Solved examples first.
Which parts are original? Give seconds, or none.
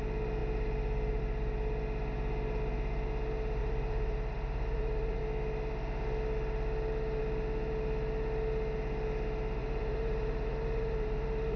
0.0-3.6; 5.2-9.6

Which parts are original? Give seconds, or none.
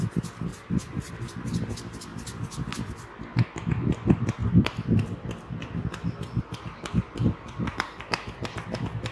0.0-0.5; 1.1-9.1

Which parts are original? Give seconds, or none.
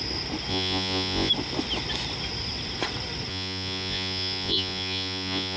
0.0-0.5; 1.3-3.3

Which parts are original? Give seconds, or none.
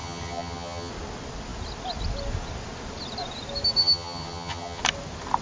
0.9-3.8; 4.8-5.4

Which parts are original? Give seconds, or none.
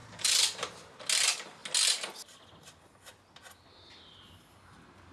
1.0-5.1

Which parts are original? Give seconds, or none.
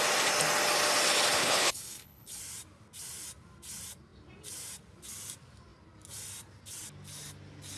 0.0-1.4; 2.4-7.8